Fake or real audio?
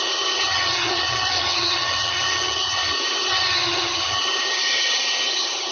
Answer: fake